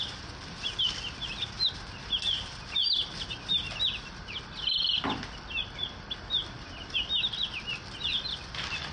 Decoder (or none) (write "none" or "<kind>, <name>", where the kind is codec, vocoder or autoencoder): none